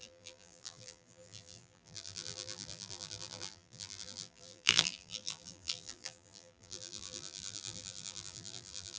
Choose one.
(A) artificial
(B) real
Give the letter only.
A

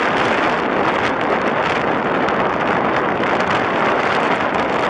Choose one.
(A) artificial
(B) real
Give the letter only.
B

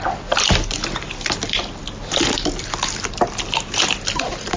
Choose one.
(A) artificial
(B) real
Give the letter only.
B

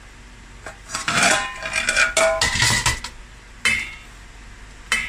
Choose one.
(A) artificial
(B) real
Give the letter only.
B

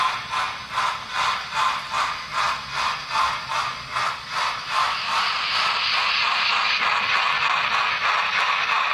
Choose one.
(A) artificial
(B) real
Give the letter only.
B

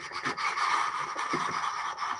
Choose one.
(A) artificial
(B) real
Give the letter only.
A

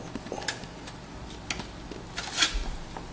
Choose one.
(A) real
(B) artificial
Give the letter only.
A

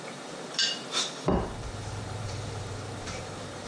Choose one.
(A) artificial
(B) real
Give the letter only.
A